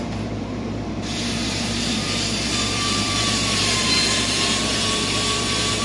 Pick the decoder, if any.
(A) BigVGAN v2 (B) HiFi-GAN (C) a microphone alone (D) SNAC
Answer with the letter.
A